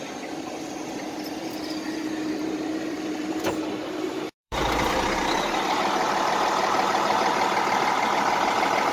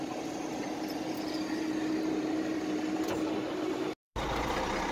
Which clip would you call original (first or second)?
second